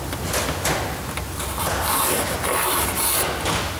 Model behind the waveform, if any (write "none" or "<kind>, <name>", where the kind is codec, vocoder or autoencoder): none